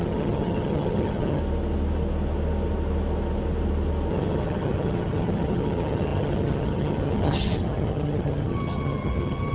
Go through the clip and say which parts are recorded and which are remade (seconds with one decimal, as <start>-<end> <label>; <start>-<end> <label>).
0.0-1.4 remade; 1.4-4.1 recorded; 4.1-9.5 remade